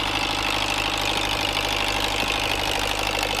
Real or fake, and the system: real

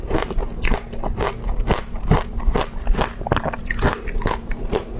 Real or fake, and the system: real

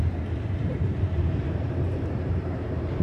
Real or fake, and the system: fake, vocoder, BigVGAN v2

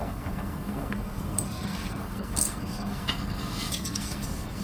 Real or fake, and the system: fake, codec, SNAC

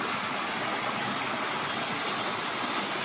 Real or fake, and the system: real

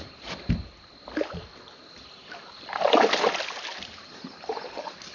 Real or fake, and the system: real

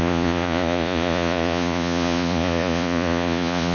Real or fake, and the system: fake, vocoder, Vocos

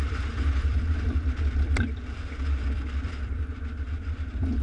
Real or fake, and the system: fake, vocoder, BigVGAN v2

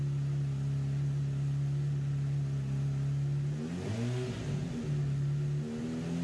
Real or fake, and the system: real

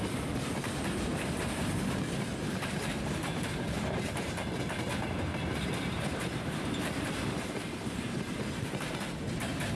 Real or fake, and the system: fake, vocoder, BigVGAN v2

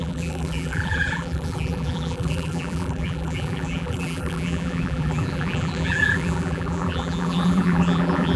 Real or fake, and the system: fake, vocoder, BigVGAN v2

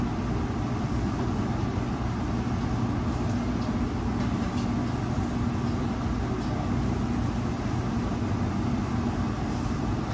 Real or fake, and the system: real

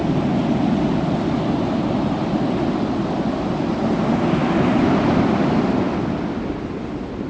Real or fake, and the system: real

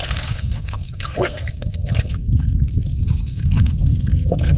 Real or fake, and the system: fake, codec, SNAC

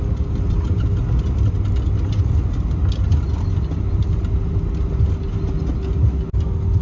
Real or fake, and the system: real